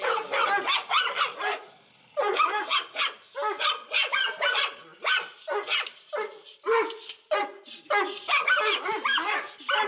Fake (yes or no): no